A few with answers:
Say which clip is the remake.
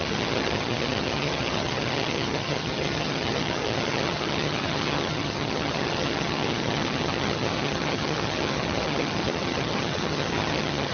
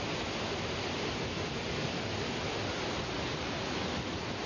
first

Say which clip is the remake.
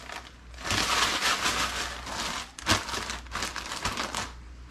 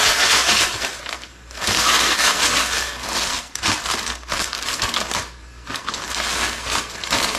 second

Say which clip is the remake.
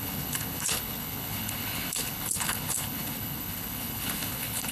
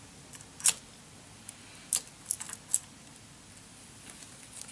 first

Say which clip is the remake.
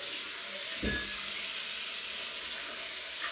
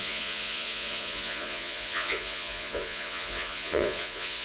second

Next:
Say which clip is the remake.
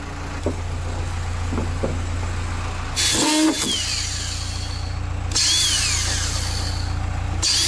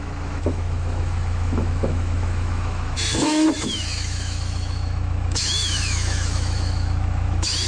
second